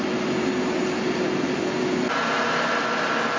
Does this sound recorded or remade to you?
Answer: recorded